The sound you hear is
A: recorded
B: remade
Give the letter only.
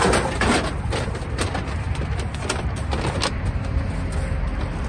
A